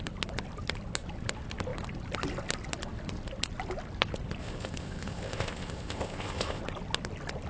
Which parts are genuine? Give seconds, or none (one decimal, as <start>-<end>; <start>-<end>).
0.0-4.4; 6.6-7.5

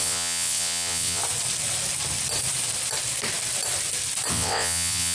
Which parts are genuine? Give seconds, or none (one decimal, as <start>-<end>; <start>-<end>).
1.2-4.3

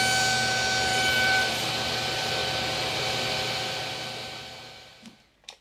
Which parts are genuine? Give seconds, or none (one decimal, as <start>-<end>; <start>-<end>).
0.0-0.9; 1.7-2.4; 3.0-5.6

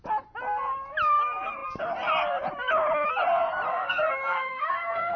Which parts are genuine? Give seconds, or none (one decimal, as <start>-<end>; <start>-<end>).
0.0-3.7

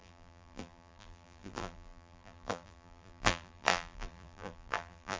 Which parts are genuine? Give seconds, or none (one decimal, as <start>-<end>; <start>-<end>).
none

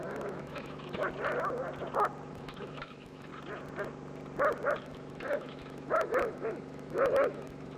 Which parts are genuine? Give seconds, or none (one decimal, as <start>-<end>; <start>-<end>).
1.0-2.3; 3.3-4.8